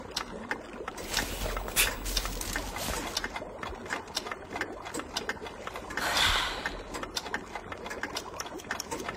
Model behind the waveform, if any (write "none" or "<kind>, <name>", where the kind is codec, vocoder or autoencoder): none